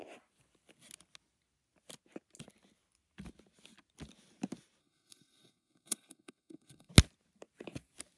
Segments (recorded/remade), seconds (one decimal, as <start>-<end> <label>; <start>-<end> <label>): 0.0-4.8 recorded; 4.8-6.9 remade; 6.9-8.2 recorded